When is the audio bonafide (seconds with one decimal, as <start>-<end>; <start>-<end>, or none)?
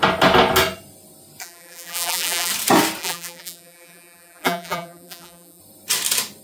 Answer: 0.0-1.4; 2.5-3.0; 5.6-6.4